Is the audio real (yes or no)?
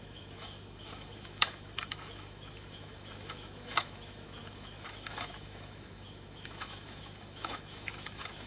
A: no